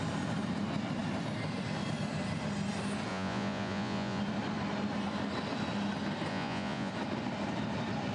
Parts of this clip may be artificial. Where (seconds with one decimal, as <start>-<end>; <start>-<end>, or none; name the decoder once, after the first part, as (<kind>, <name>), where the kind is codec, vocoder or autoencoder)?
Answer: 3.1-4.2 (vocoder, Vocos); 6.3-6.9